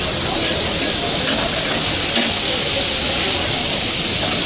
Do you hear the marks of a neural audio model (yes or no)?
no